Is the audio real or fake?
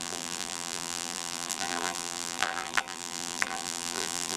fake